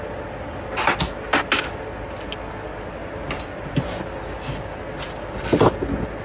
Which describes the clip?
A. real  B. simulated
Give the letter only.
A